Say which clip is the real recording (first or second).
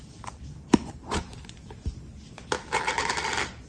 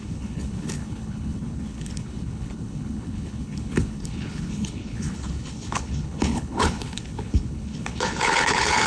first